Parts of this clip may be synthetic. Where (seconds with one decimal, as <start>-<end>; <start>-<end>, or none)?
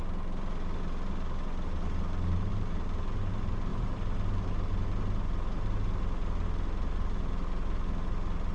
3.7-4.5